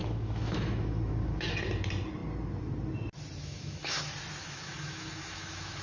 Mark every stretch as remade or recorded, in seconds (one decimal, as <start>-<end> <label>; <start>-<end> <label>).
0.0-1.5 remade; 1.5-3.4 recorded; 3.4-4.0 remade; 4.0-4.4 recorded; 4.4-5.8 remade